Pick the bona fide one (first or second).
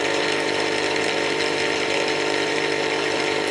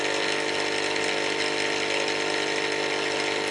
second